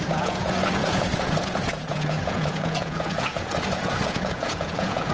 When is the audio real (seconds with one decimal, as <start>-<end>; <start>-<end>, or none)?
none